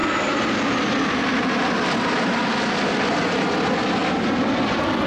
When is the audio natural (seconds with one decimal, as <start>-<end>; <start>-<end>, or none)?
0.0-5.1